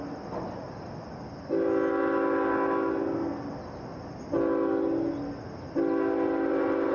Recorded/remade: recorded